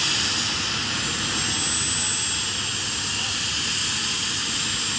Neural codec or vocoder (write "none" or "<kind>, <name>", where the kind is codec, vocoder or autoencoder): none